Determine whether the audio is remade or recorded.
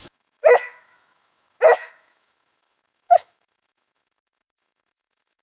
remade